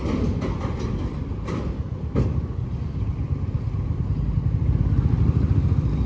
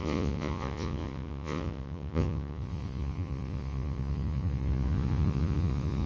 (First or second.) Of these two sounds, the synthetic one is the second